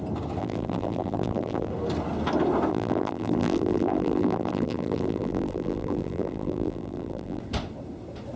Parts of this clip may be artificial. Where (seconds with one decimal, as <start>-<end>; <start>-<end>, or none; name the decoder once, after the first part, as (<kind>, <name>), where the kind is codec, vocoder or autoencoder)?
0.4-1.7 (vocoder, BigVGAN v2); 2.7-7.4